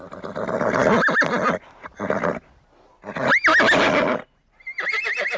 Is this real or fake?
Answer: real